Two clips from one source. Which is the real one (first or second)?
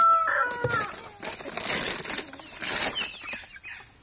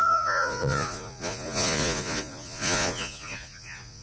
first